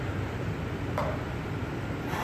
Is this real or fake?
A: real